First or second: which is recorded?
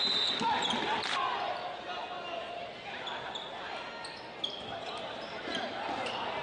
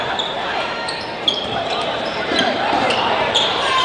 first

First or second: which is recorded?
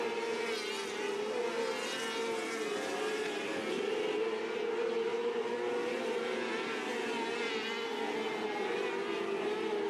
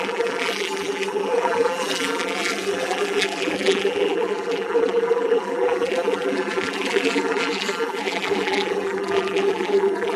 first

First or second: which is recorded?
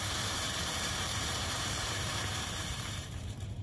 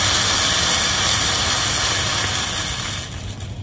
second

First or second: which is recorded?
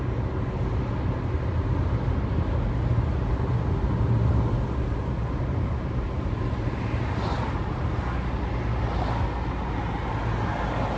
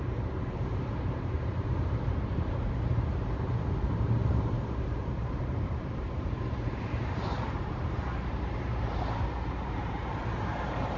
first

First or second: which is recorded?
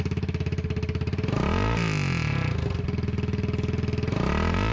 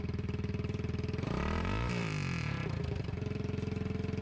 first